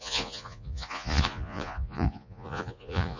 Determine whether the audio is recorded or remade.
remade